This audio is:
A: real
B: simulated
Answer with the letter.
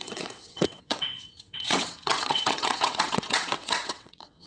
B